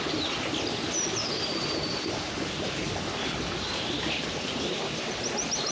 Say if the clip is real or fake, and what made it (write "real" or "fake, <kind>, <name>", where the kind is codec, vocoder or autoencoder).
real